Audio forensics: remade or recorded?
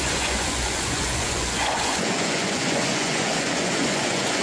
remade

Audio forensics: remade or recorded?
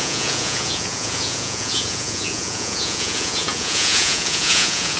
remade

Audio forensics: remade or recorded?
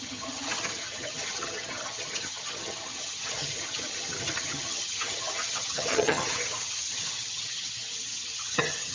remade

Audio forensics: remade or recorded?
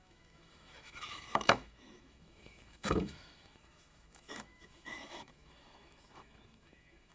remade